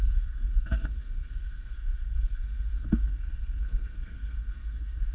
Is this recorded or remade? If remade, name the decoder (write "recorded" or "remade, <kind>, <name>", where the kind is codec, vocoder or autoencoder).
remade, codec, SNAC